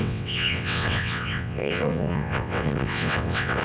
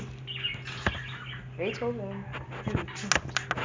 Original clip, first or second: second